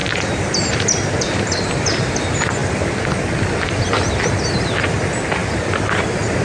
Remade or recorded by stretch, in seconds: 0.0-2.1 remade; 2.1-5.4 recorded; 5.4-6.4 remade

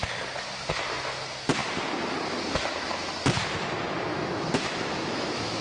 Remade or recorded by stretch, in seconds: 0.0-4.1 recorded; 4.1-5.6 remade